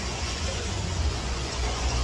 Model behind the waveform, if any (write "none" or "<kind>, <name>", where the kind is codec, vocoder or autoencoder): vocoder, Vocos